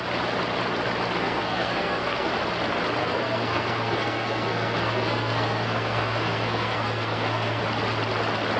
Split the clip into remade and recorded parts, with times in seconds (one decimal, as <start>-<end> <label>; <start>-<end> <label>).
0.0-1.2 recorded; 1.2-2.3 remade; 2.3-3.0 recorded; 3.0-7.6 remade; 7.6-8.6 recorded